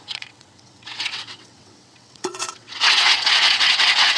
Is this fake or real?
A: fake